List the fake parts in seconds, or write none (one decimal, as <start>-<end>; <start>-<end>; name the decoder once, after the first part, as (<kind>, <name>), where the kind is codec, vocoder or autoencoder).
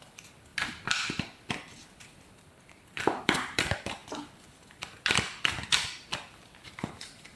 0.0-4.0 (vocoder, BigVGAN v2); 4.8-7.4